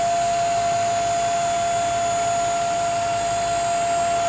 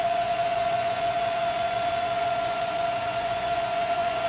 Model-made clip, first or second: second